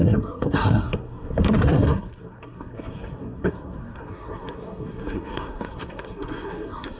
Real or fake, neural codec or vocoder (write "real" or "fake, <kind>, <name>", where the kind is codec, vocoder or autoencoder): fake, codec, SNAC